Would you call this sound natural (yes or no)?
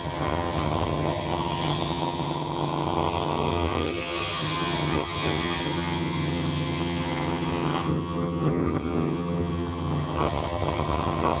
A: no